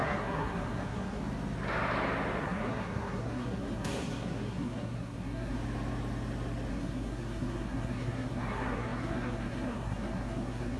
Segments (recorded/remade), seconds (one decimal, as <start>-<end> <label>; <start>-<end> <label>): 0.0-1.2 remade; 1.2-2.4 recorded; 2.4-5.6 remade; 5.6-6.7 recorded; 6.7-10.8 remade